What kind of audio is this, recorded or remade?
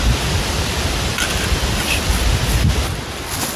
recorded